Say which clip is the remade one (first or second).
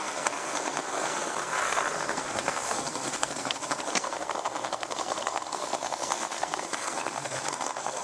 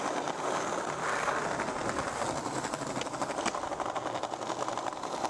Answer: first